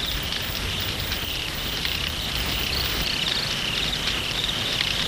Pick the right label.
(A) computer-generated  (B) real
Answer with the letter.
A